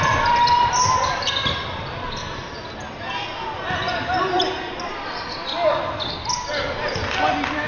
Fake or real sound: real